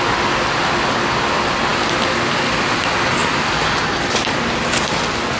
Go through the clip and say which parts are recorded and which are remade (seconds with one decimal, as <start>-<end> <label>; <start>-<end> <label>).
0.0-5.4 recorded

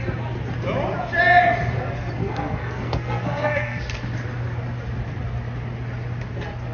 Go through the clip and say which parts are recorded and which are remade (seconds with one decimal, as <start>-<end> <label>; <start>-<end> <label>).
0.0-2.2 recorded; 2.2-3.8 remade; 3.8-6.7 recorded